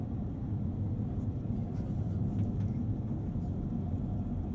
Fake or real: real